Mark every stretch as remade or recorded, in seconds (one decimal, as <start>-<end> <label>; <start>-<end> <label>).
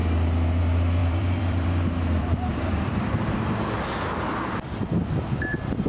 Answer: 0.0-1.0 recorded; 1.0-3.0 remade; 3.0-5.9 recorded